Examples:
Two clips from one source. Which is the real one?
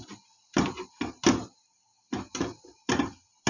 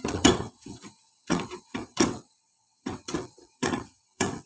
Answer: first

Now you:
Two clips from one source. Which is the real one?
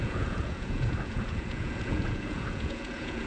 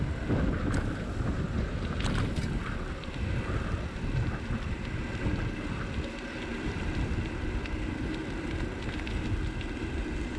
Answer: second